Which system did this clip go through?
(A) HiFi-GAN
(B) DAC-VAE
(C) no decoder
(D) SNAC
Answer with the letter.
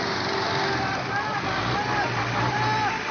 C